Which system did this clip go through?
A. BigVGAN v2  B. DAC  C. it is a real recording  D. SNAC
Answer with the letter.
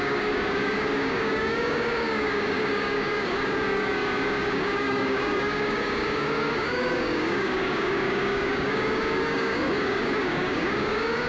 B